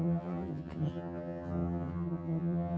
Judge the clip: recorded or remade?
remade